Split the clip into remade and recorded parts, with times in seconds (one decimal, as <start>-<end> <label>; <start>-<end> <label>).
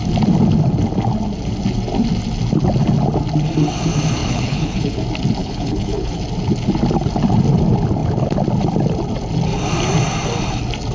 0.0-4.2 recorded; 4.2-5.0 remade; 5.0-5.4 recorded; 5.4-6.2 remade; 6.2-10.9 recorded